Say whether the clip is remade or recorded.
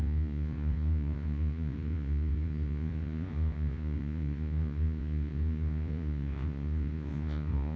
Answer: remade